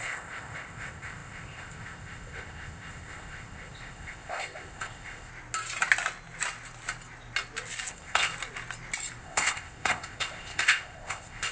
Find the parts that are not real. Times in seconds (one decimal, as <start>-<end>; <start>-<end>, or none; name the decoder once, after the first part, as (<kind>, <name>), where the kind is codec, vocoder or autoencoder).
0.0-5.3 (codec, ZipCodec); 7.9-8.3; 9.2-11.5